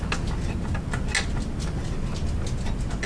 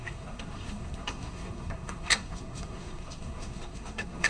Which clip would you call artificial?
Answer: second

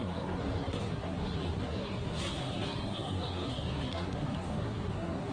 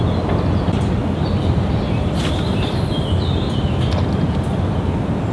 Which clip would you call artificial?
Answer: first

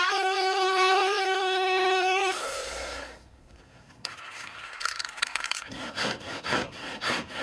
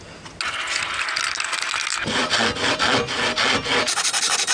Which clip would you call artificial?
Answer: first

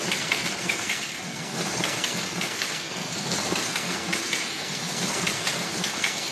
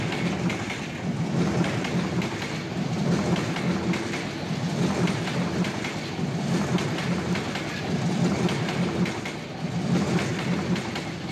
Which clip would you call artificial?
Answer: first